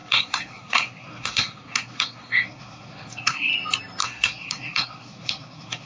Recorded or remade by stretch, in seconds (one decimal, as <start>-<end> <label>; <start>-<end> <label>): 0.0-3.5 remade; 3.5-4.0 recorded; 4.0-5.9 remade